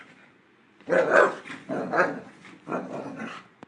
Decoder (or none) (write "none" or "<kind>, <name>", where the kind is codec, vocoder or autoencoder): vocoder, Vocos